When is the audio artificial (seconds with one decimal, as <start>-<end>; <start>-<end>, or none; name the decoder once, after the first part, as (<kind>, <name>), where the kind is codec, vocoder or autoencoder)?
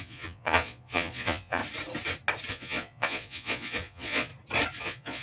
0.0-1.6 (vocoder, Vocos); 2.5-4.3; 4.8-5.2